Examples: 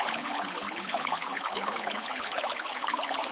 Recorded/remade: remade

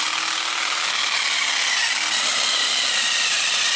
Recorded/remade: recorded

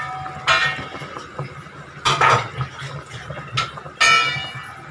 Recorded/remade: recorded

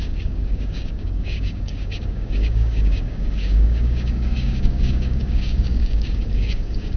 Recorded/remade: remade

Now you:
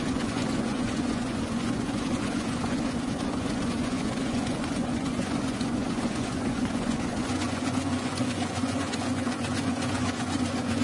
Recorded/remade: remade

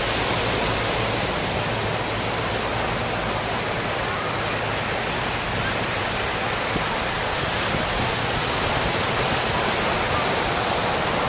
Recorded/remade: recorded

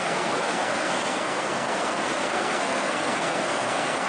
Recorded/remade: remade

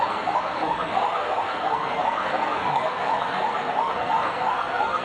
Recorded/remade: remade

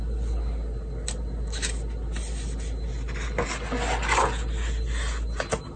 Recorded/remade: recorded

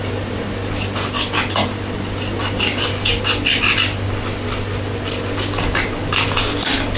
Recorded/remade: recorded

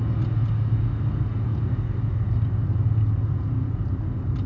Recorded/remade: recorded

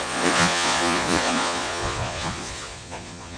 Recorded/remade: remade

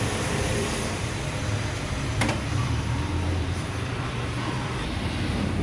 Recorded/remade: remade